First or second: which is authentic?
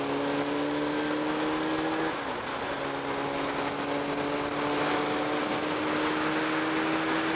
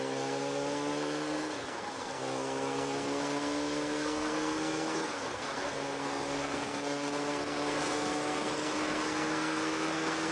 first